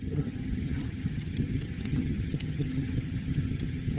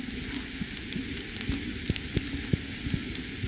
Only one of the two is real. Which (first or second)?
second